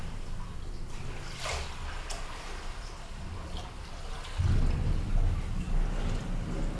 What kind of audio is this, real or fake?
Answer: real